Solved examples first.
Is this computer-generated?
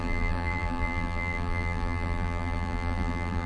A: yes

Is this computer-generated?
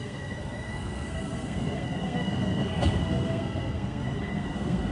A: yes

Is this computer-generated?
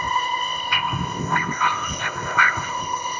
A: yes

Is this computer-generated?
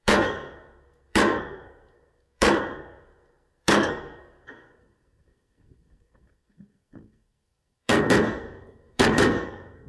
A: yes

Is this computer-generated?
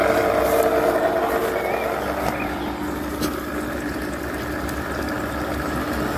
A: no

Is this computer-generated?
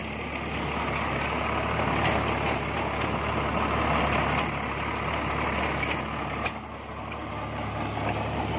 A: no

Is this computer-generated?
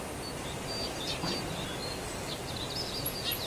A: no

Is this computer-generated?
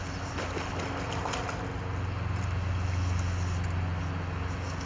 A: no